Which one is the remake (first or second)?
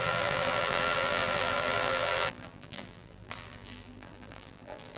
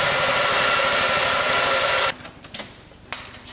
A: first